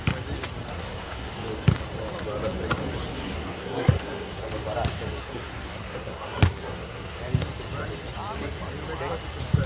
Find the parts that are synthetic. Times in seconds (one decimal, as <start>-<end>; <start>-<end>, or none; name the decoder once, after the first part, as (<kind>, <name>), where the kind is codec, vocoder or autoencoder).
0.7-1.3 (codec, SNAC); 3.1-4.5; 5.2-7.2